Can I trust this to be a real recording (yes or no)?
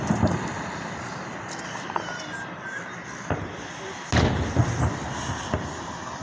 yes